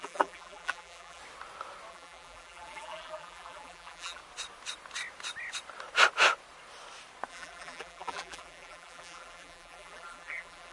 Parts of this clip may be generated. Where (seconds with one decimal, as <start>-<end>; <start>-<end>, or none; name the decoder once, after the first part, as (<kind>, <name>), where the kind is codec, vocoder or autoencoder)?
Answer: 0.0-1.2 (vocoder, BigVGAN v2); 1.9-4.2; 7.3-10.7